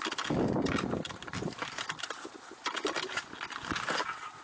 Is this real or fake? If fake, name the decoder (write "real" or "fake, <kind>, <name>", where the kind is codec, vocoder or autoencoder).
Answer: real